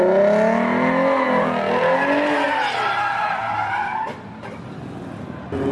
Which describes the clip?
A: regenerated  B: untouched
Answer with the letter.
B